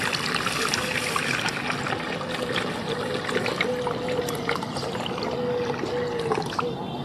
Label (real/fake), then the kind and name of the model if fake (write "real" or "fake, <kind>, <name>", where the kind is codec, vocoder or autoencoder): real